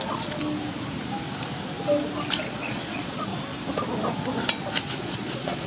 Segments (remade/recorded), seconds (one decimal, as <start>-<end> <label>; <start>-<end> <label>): 0.0-0.4 remade; 0.4-2.5 recorded; 2.5-3.3 remade; 3.3-5.0 recorded; 5.0-5.7 remade